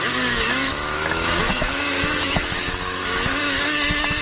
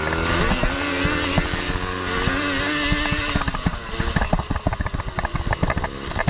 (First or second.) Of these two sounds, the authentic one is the second